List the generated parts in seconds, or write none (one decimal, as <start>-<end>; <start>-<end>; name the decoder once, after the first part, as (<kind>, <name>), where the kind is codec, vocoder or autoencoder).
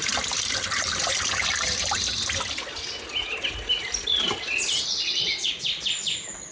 4.9-5.5 (vocoder, WaveNeXt)